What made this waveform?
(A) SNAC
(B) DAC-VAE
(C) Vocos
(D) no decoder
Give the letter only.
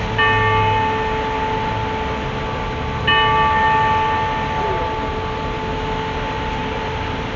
D